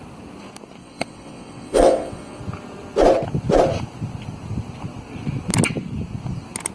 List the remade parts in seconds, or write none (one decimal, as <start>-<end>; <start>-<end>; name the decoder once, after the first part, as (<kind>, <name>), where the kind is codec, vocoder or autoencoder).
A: 0.8-2.4 (vocoder, WaveNeXt)